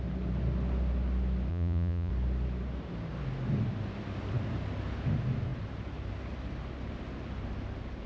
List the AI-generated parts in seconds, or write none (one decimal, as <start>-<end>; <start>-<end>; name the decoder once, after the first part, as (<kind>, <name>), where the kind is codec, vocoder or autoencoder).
1.5-2.1 (vocoder, Vocos)